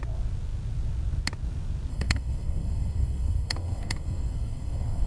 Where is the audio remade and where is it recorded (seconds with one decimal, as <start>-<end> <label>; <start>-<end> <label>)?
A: 0.0-1.9 recorded; 1.9-5.1 remade